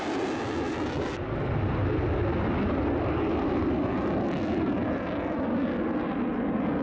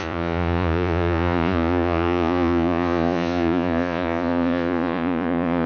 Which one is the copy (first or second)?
second